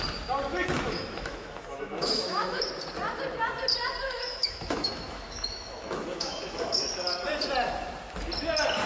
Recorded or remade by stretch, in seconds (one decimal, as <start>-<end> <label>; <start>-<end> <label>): 0.0-0.5 recorded; 0.5-2.6 remade; 2.6-4.0 recorded; 4.0-6.7 remade; 6.7-8.9 recorded